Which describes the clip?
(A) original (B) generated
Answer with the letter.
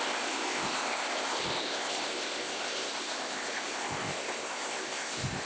B